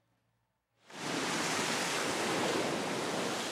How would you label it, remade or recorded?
recorded